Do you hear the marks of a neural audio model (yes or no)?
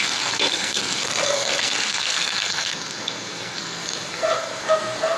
yes